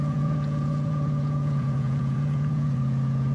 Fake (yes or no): yes